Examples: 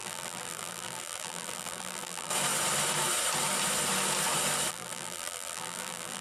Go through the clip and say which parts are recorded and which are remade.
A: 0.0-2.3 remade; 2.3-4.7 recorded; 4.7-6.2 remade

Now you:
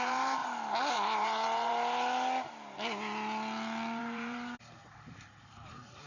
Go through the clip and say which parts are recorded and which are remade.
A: 0.0-0.4 remade; 0.4-0.9 recorded; 0.9-1.7 remade; 1.7-4.0 recorded; 4.0-4.8 remade; 4.8-5.4 recorded; 5.4-6.1 remade

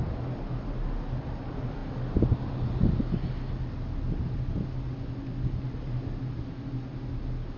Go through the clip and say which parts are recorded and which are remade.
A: 0.0-7.6 recorded

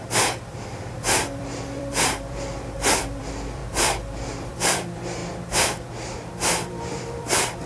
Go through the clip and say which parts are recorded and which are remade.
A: 0.0-5.2 remade; 5.2-6.7 recorded; 6.7-7.7 remade

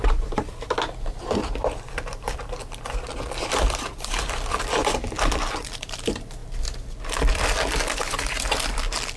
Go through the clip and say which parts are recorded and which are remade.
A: 0.0-6.4 remade; 6.4-7.0 recorded; 7.0-9.2 remade

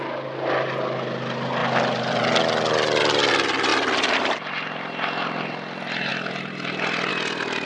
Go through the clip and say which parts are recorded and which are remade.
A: 0.0-1.6 recorded; 1.6-3.3 remade; 3.3-3.7 recorded; 3.7-4.5 remade; 4.5-6.1 recorded; 6.1-7.1 remade; 7.1-7.7 recorded

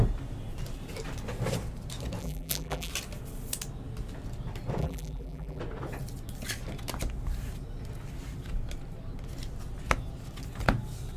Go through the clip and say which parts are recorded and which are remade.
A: 0.0-2.2 recorded; 2.2-2.9 remade; 2.9-4.8 recorded; 4.8-5.6 remade; 5.6-11.2 recorded

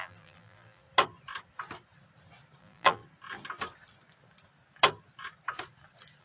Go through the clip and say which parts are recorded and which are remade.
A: 0.0-0.8 remade; 0.8-2.6 recorded; 2.6-3.0 remade; 3.0-6.2 recorded